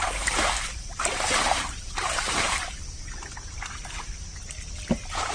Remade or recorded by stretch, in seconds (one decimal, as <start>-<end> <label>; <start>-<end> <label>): 0.0-2.8 remade; 2.8-3.5 recorded; 3.5-4.3 remade; 4.3-4.8 recorded; 4.8-5.3 remade